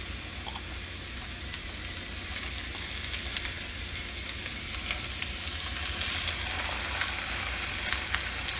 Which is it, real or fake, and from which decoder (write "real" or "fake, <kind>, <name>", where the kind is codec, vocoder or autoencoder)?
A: real